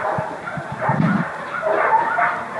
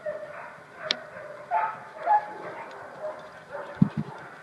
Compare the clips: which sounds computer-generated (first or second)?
second